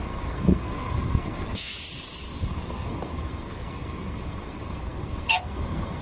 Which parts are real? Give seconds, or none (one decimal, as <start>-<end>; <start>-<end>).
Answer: 1.7-2.5